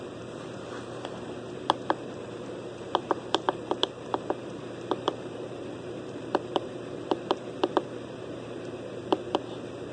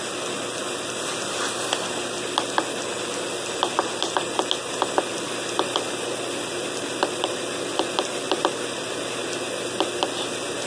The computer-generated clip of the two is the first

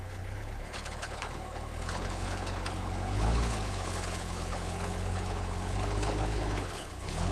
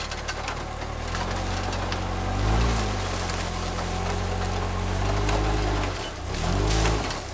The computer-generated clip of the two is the first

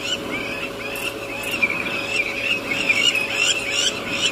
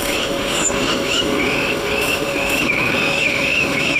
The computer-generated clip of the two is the second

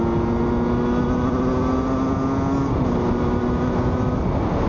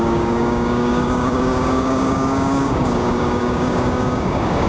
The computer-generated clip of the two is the second